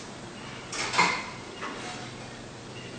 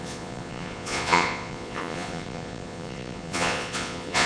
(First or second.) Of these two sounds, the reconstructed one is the second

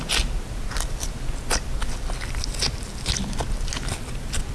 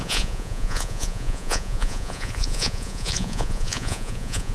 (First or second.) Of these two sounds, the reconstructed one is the second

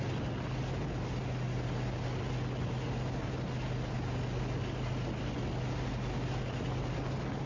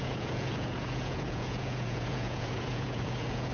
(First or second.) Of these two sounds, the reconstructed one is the second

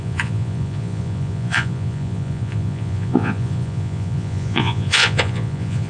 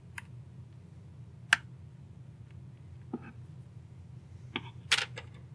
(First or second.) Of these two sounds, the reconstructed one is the first